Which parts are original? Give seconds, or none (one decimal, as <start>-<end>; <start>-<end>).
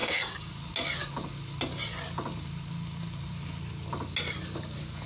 0.5-5.1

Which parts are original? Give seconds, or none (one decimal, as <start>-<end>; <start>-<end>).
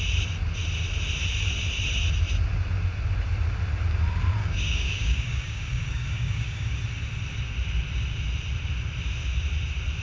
0.0-4.4; 6.8-10.0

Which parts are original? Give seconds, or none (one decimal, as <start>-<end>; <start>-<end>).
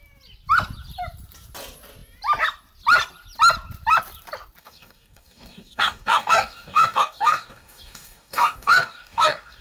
0.0-4.6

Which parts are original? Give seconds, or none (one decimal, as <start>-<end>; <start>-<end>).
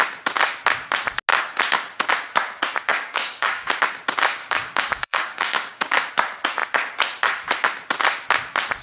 0.0-2.9; 3.8-4.4; 6.1-8.8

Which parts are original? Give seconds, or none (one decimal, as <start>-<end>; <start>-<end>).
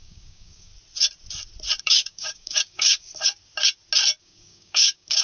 0.7-1.8; 3.1-4.2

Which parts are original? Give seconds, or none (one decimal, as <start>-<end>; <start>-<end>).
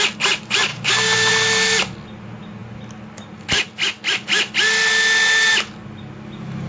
0.0-0.7; 1.3-6.7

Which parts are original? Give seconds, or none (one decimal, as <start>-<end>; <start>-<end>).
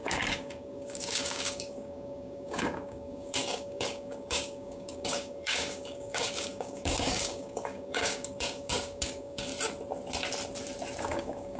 9.5-11.0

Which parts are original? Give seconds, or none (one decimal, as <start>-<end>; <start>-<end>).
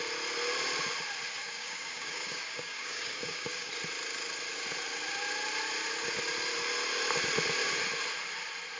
0.0-1.4; 3.7-8.8